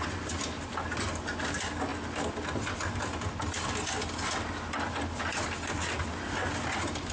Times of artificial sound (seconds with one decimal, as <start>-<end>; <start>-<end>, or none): none